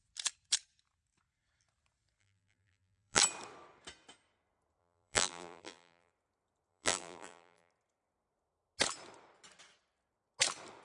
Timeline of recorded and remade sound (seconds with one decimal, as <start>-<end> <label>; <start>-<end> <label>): 0.0-2.2 recorded; 2.2-3.2 remade; 3.2-4.8 recorded; 4.8-6.1 remade; 6.1-6.7 recorded; 6.7-7.7 remade; 7.7-10.8 recorded